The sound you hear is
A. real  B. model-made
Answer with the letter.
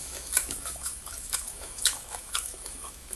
B